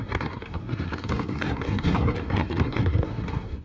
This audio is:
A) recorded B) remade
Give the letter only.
B